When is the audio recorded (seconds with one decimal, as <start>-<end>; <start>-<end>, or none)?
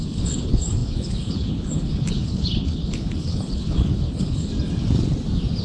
4.5-5.6